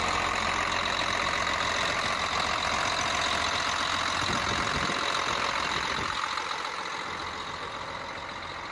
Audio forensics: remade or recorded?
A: recorded